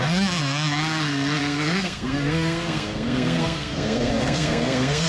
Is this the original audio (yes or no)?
no